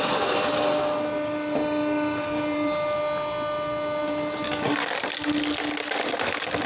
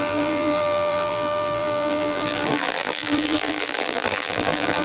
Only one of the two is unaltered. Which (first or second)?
first